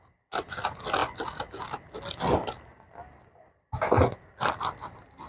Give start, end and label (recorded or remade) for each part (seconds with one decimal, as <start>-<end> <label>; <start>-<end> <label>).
0.0-5.3 recorded